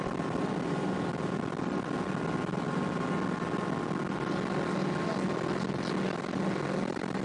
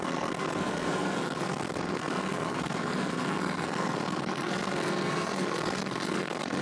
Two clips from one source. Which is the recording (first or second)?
first